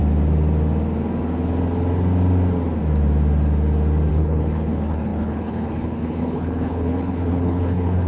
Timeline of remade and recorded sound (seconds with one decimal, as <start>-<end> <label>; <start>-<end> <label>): 0.0-4.1 recorded; 4.1-8.1 remade